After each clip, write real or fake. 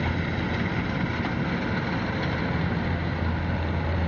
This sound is real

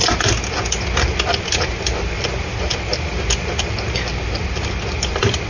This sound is real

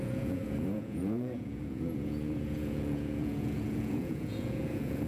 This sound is fake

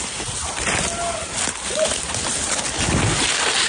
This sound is real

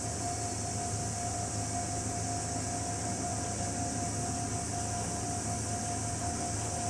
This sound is real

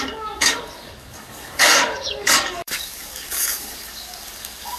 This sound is fake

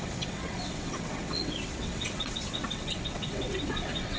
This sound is fake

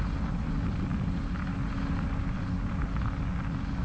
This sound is real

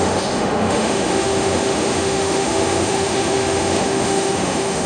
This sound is fake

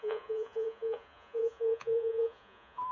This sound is fake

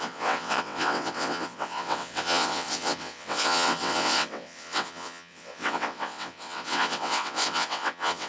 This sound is fake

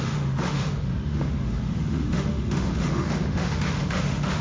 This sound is fake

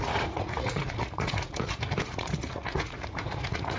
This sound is fake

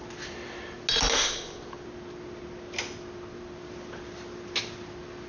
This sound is real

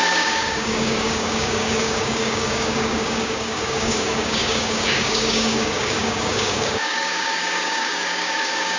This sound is fake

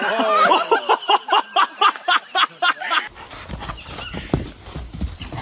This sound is real